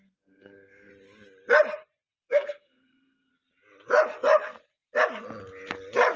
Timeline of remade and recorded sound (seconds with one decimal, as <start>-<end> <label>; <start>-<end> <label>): 0.0-0.9 remade; 0.9-2.3 recorded; 2.3-3.3 remade; 3.3-6.2 recorded